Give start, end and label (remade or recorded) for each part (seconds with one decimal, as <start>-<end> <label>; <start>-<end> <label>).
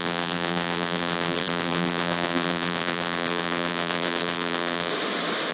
0.0-4.9 remade; 4.9-5.5 recorded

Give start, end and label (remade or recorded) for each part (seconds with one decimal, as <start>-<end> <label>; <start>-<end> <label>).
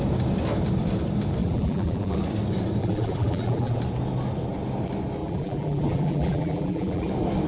0.0-1.4 recorded; 1.4-2.2 remade; 2.2-2.8 recorded; 2.8-3.8 remade; 3.8-5.2 recorded; 5.2-7.1 remade; 7.1-7.5 recorded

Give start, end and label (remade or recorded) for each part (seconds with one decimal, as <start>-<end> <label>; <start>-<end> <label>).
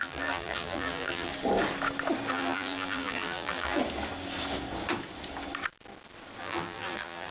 0.0-1.3 remade; 1.3-2.3 recorded; 2.3-3.8 remade; 3.8-6.4 recorded; 6.4-7.3 remade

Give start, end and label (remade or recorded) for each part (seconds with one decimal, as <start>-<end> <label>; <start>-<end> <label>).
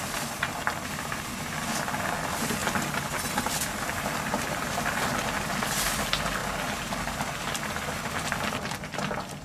0.0-9.4 recorded